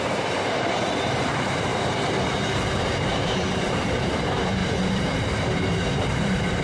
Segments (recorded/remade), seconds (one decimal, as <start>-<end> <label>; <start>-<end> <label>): 0.0-1.7 remade; 1.7-2.8 recorded; 2.8-6.6 remade